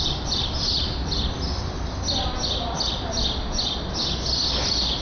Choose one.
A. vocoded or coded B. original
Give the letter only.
B